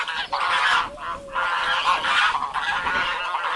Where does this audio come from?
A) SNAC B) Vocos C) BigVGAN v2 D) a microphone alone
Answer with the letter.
D